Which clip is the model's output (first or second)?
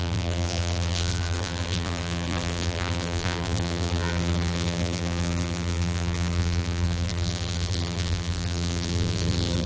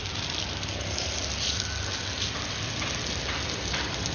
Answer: first